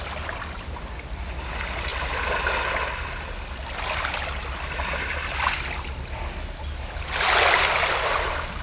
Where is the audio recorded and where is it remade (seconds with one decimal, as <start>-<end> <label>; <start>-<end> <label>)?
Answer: 0.0-8.6 recorded